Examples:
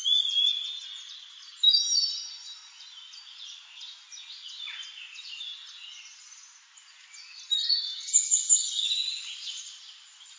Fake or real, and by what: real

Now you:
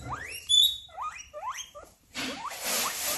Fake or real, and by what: fake, vocoder, BigVGAN v2